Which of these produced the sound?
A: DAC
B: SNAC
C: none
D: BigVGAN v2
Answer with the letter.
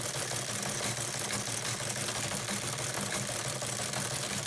C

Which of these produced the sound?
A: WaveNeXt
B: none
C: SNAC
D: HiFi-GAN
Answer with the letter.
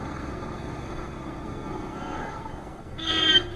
C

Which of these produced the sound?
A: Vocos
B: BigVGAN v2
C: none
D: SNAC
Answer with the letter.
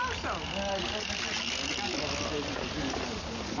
C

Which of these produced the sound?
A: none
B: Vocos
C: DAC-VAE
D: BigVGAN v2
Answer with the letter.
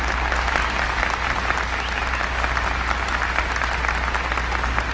A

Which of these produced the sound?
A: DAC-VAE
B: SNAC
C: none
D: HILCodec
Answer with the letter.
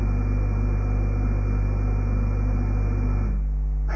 C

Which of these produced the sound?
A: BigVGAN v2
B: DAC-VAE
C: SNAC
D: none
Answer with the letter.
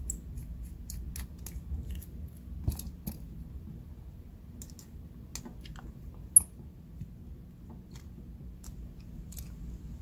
D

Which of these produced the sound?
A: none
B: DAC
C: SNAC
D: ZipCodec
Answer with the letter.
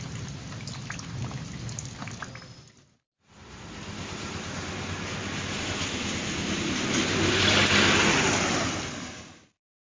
A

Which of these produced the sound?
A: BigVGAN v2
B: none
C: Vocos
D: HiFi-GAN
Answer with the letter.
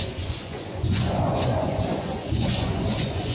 C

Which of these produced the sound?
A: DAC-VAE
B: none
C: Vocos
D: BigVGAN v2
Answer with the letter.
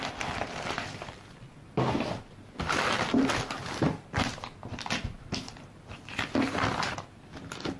D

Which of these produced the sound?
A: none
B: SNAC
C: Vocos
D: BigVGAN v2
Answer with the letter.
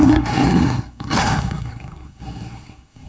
B